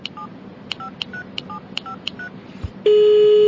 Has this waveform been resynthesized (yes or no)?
no